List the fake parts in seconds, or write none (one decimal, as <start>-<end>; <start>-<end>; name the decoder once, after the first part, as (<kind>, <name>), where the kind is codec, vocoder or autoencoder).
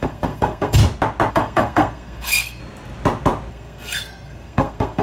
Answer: 0.0-0.8 (codec, SNAC); 1.3-2.6; 3.5-5.0